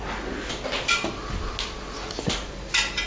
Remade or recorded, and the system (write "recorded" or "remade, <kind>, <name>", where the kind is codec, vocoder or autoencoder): recorded